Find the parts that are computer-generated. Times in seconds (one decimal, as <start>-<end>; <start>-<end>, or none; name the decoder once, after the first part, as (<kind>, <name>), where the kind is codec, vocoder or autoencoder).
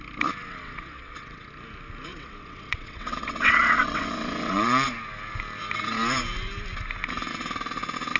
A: 0.4-1.5 (vocoder, WaveNeXt); 2.1-4.9